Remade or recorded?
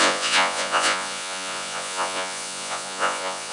remade